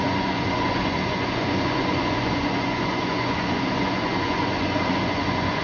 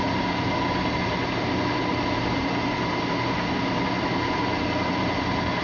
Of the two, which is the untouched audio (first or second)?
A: second